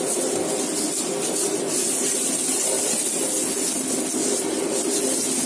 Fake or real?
real